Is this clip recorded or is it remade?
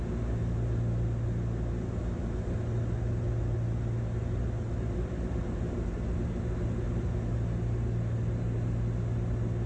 recorded